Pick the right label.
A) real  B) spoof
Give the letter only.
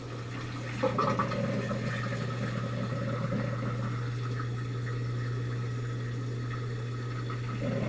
A